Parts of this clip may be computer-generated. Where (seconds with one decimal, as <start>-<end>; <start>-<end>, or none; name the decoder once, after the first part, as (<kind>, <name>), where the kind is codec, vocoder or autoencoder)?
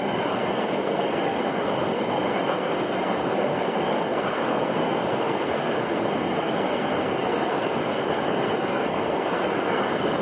0.0-10.2 (codec, SNAC)